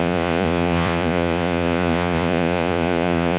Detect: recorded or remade remade